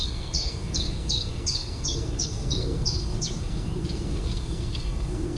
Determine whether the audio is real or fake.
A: fake